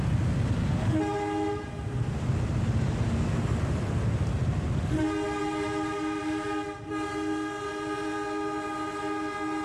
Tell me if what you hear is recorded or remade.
recorded